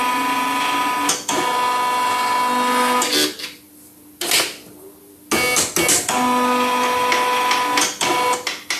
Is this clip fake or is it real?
real